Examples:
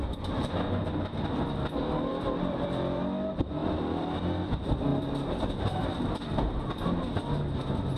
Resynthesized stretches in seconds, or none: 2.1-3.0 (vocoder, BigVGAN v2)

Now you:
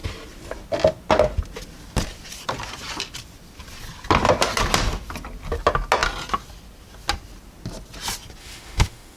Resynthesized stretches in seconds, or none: 8.4-9.2 (autoencoder, DAC-VAE)

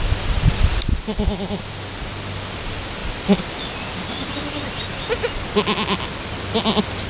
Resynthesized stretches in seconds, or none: none